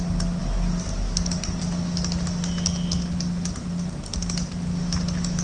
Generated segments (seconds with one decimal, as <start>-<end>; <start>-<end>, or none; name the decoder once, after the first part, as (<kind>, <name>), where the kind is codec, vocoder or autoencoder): none